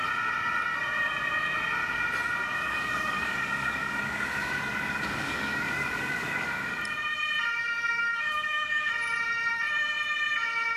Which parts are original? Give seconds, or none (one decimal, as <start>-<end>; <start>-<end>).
0.0-2.4; 6.8-7.6; 8.9-10.8